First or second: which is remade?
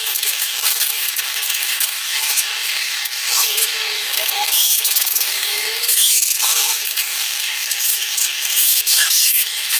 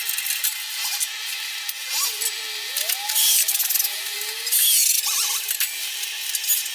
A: first